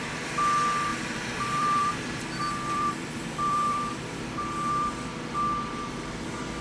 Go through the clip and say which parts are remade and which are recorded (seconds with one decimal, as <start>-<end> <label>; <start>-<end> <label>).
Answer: 0.0-0.9 recorded; 0.9-4.9 remade; 4.9-6.6 recorded